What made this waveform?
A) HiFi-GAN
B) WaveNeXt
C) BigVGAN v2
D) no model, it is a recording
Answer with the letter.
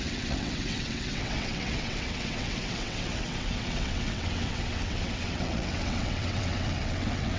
B